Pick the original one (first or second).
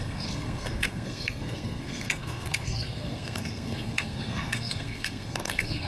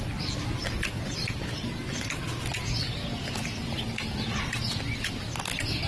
second